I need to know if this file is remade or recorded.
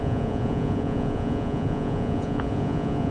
remade